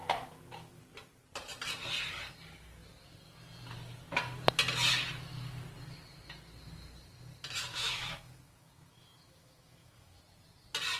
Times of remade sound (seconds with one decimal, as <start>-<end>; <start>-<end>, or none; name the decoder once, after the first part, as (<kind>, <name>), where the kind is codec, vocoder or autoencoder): 0.0-0.8 (autoencoder, DAC-VAE); 7.7-10.2